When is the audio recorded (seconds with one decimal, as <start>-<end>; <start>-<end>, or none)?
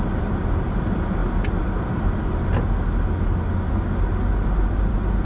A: 0.0-5.2